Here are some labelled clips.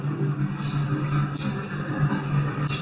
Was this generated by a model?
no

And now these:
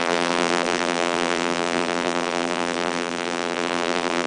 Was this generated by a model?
yes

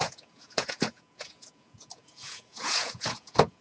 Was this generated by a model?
yes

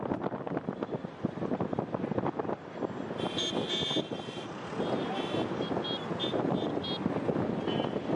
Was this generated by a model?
no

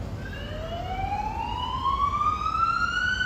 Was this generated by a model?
no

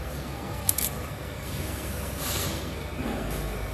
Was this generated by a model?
yes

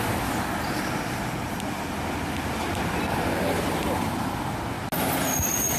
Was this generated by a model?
no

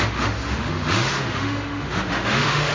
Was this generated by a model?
yes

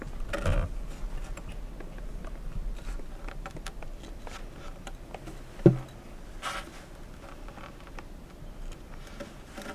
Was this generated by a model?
no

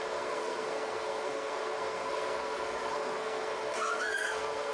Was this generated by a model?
yes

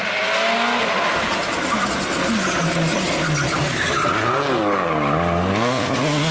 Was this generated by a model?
no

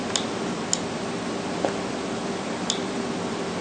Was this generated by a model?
no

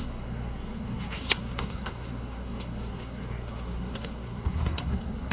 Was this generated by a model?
yes